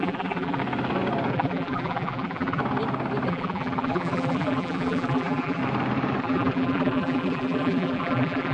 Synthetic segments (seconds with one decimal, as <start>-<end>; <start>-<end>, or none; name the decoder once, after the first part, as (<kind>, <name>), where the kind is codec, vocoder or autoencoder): 0.0-0.6 (vocoder, BigVGAN v2); 1.3-2.6; 3.3-5.6; 6.2-8.5